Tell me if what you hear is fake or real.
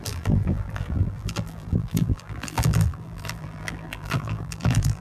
fake